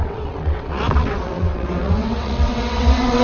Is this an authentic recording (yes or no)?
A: no